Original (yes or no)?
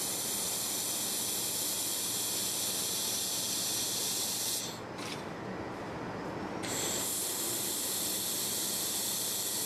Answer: yes